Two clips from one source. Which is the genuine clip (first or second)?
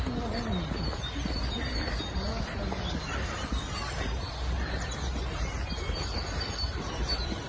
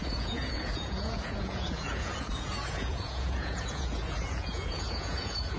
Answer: first